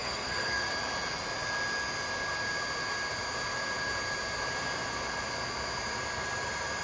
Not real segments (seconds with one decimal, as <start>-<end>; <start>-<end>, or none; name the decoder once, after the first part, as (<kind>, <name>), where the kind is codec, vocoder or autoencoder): 0.0-0.7 (codec, SNAC)